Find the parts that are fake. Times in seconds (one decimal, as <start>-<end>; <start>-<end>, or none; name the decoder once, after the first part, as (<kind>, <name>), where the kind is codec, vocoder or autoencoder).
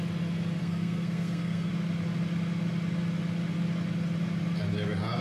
0.6-1.7 (codec, SNAC)